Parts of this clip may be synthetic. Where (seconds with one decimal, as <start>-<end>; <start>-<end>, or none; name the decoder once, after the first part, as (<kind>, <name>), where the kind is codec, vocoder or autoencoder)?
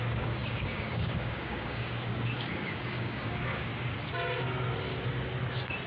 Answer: 0.0-3.7 (codec, DAC)